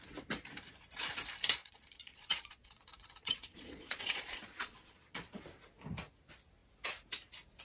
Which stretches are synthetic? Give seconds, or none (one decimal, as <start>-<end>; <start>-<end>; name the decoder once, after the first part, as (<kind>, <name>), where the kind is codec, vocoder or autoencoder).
1.6-5.4 (vocoder, Vocos)